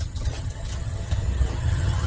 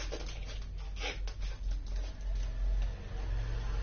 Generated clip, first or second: first